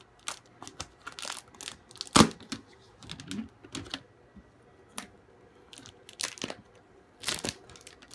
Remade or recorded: recorded